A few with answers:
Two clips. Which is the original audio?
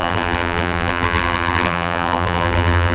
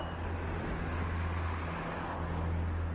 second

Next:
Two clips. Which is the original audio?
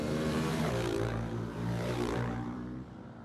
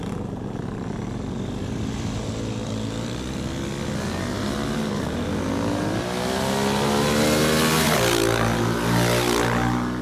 second